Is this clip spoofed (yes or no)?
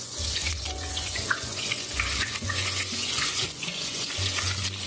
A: yes